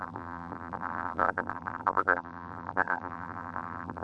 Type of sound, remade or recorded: remade